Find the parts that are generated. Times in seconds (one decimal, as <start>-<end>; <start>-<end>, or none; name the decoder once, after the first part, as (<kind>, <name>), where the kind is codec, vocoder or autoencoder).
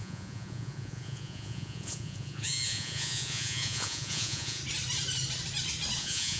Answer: 0.0-4.6 (vocoder, Vocos); 6.0-6.4